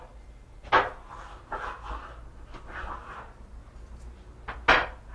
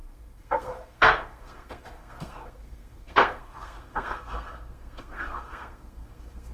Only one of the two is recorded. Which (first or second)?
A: first